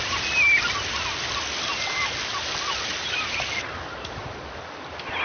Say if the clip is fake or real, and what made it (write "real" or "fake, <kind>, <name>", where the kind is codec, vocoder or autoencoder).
real